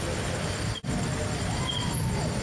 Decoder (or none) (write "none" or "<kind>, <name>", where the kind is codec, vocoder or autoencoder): none